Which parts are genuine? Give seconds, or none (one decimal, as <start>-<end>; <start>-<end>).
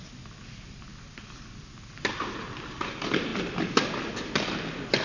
0.0-5.0